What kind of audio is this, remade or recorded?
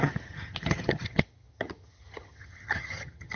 remade